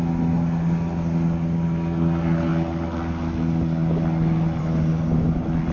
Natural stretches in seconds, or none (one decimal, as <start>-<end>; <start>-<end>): 0.0-5.7